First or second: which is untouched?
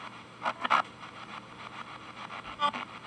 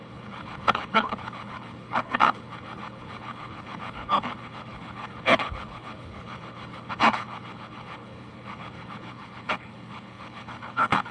first